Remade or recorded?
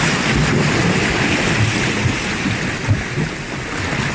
recorded